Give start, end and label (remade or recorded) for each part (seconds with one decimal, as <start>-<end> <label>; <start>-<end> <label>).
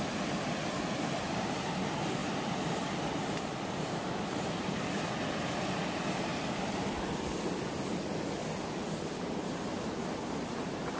0.0-2.2 recorded; 2.2-5.1 remade; 5.1-11.0 recorded